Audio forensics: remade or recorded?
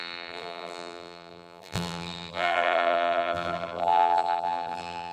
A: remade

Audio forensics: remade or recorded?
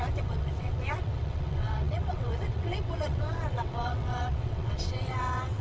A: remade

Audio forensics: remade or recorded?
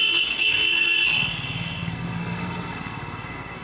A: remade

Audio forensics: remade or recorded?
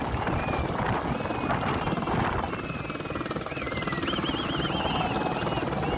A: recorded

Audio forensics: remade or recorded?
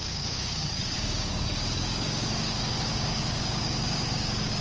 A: remade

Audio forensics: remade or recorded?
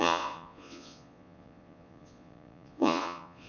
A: remade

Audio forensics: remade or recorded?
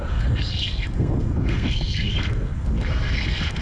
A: remade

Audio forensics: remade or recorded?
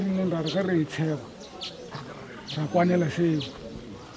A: recorded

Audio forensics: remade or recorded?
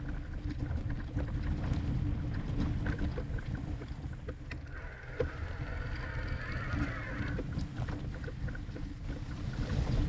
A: recorded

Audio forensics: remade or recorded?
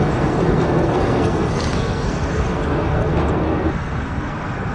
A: remade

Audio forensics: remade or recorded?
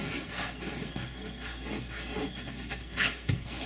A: remade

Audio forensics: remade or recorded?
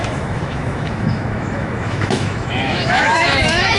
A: remade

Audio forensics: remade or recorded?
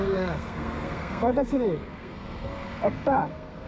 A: remade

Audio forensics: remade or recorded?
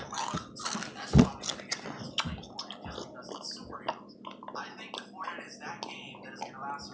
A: recorded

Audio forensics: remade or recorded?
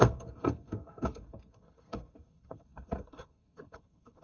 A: remade